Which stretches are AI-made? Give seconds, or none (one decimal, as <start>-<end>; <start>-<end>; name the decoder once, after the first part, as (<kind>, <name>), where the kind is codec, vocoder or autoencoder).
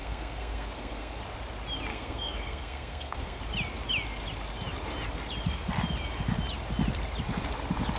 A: 0.0-1.2 (codec, SNAC); 1.9-3.4